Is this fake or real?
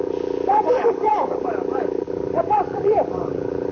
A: fake